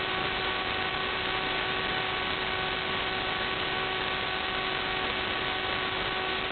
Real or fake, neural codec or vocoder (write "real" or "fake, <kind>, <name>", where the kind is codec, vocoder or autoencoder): real